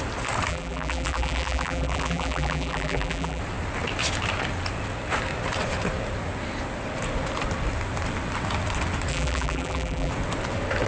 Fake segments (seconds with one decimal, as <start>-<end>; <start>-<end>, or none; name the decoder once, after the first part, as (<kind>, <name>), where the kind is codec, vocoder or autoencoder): 0.5-3.4 (vocoder, BigVGAN v2); 9.1-10.1